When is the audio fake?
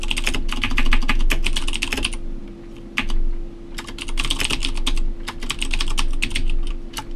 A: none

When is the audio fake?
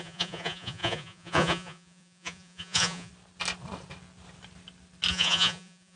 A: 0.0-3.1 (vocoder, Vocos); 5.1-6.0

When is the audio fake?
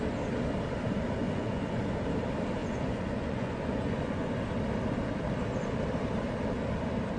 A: 1.2-1.8 (vocoder, Vocos); 2.6-4.3